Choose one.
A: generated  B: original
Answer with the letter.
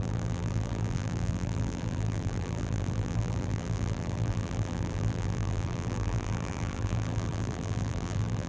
A